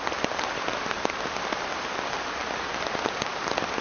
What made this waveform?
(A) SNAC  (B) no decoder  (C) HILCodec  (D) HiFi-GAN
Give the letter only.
B